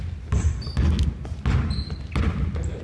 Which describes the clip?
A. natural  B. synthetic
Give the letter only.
A